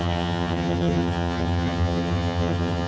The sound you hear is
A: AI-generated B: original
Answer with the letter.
A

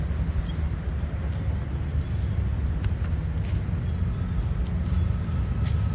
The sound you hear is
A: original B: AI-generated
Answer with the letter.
A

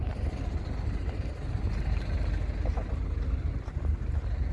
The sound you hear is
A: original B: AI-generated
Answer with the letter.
A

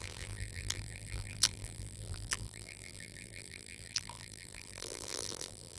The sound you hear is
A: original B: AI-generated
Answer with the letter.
B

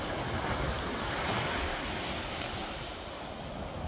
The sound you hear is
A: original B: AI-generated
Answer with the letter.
A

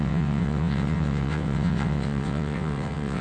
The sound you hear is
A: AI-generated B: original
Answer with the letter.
A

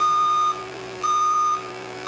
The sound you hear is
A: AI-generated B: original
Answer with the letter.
A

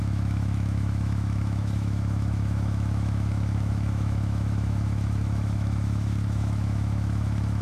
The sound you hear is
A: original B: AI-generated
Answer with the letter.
B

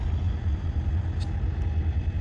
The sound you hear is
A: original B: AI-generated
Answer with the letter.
A